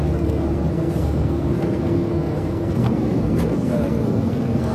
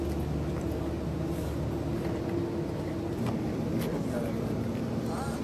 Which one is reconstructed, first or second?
first